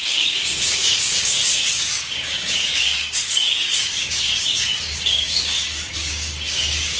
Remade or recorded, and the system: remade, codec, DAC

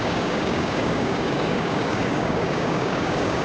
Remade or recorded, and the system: remade, codec, DAC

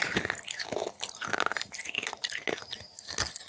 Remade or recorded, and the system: recorded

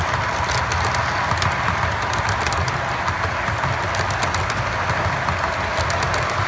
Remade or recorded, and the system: recorded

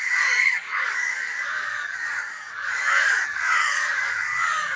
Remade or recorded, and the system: remade, codec, DAC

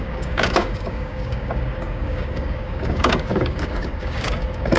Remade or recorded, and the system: remade, codec, DAC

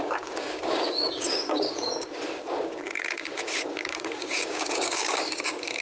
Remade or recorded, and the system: remade, codec, DAC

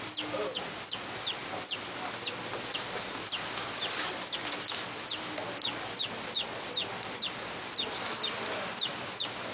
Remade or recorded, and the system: recorded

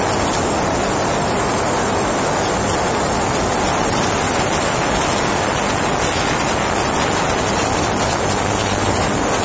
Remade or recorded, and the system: recorded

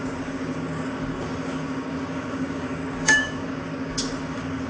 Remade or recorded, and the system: remade, codec, DAC